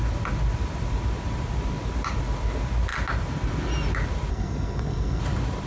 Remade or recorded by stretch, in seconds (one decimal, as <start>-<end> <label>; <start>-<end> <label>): 0.0-4.3 recorded; 4.3-5.2 remade; 5.2-5.7 recorded